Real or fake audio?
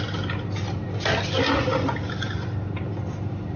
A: real